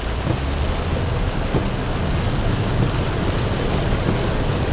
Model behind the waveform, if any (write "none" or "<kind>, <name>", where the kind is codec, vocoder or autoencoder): none